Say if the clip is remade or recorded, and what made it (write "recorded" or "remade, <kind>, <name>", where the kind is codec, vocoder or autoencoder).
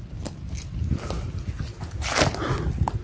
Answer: recorded